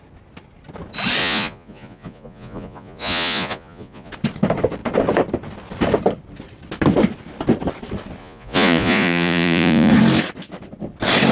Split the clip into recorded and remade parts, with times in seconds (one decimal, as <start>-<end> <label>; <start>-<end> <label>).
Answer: 0.0-1.2 recorded; 1.2-4.1 remade; 4.1-8.2 recorded; 8.2-9.9 remade; 9.9-11.3 recorded

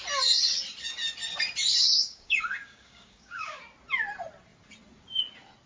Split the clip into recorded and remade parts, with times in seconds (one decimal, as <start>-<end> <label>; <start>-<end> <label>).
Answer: 0.0-2.0 recorded; 2.0-3.6 remade; 3.6-5.7 recorded

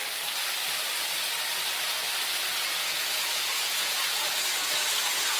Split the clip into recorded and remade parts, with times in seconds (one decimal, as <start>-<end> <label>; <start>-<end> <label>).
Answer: 0.0-2.7 recorded; 2.7-5.4 remade

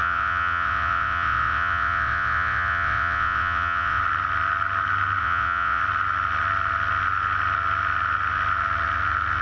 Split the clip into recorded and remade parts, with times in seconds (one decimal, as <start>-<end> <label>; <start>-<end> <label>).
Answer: 0.0-4.0 remade; 4.0-5.2 recorded; 5.2-5.8 remade; 5.8-9.4 recorded

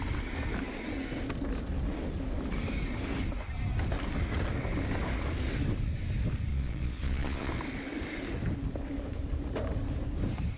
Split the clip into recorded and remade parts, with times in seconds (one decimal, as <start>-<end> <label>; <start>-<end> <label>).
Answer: 0.0-6.5 recorded; 6.5-7.5 remade; 7.5-10.6 recorded

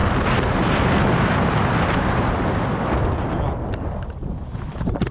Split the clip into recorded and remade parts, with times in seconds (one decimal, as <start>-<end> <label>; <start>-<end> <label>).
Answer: 0.0-5.1 recorded

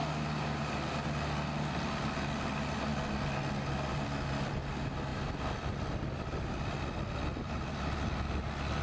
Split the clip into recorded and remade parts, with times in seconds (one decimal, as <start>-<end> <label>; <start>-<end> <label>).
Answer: 0.0-8.8 recorded

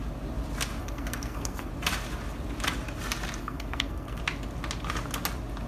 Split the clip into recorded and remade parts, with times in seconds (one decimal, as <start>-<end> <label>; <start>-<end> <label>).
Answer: 0.0-0.8 recorded; 0.8-1.7 remade; 1.7-3.4 recorded; 3.4-4.2 remade; 4.2-5.7 recorded